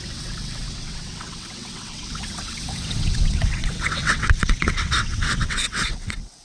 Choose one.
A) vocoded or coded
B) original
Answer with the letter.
A